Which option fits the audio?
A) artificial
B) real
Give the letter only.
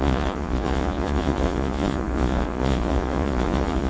A